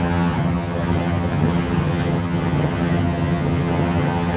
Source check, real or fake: fake